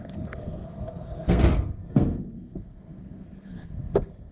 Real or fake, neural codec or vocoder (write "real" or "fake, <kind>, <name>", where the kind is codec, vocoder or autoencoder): fake, codec, SNAC